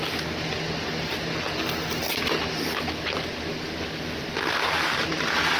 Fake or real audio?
real